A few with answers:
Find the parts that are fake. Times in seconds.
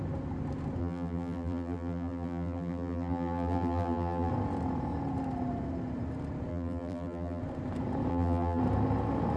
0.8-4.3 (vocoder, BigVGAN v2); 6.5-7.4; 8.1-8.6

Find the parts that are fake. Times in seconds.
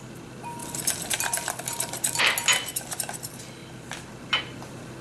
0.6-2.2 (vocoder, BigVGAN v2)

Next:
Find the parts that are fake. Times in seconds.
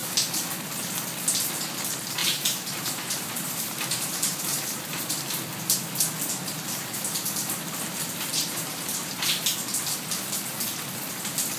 2.2-5.1 (vocoder, BigVGAN v2); 8.3-9.4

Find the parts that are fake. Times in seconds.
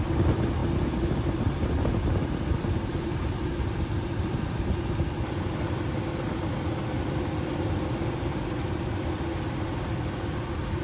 0.0-0.6 (vocoder, BigVGAN v2); 2.5-10.8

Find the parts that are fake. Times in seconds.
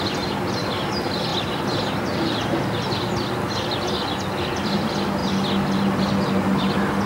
none